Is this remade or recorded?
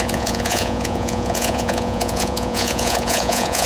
remade